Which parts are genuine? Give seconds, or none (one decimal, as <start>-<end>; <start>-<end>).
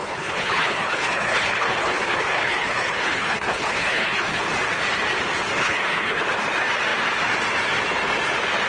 4.4-5.6; 6.2-8.7